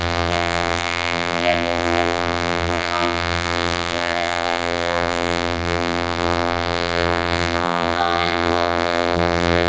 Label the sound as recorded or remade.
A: remade